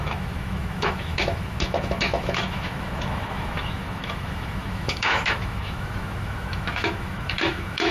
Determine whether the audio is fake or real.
fake